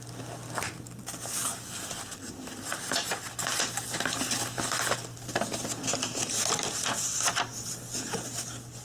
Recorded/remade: recorded